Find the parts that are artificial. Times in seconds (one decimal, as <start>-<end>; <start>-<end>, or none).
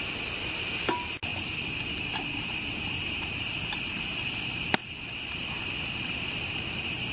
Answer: none